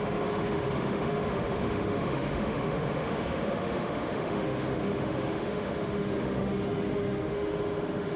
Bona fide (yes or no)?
no